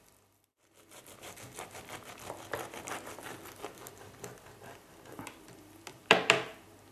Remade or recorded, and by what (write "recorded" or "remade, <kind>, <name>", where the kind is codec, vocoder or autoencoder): recorded